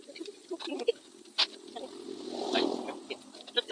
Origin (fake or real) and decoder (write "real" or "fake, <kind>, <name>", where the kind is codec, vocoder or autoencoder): real